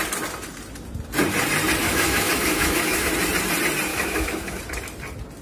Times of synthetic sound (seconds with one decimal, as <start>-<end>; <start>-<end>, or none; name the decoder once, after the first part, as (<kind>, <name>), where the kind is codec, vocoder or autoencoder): 1.8-3.1 (autoencoder, DAC-VAE); 3.9-4.6